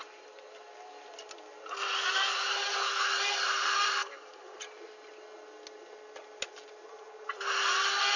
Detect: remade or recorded recorded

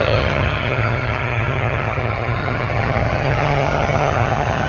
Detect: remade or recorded remade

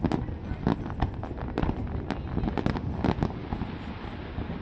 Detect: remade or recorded recorded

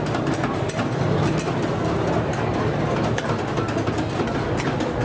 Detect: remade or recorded recorded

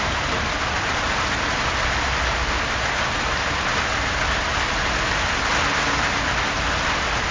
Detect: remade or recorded recorded